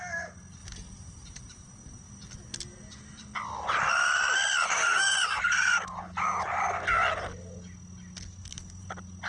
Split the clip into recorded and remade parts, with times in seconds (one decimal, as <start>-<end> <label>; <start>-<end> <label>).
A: 0.0-0.6 recorded; 0.6-3.9 remade; 3.9-4.6 recorded; 4.6-6.5 remade; 6.5-8.4 recorded; 8.4-8.9 remade; 8.9-9.3 recorded